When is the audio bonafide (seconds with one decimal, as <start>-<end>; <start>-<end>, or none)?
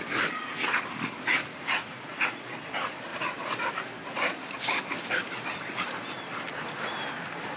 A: 0.0-1.4; 2.5-7.6